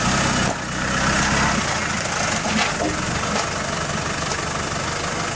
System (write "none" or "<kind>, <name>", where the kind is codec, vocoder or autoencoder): none